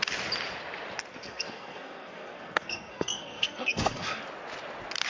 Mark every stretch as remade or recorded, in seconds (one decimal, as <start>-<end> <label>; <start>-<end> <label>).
0.0-1.1 recorded; 1.1-4.2 remade; 4.2-5.1 recorded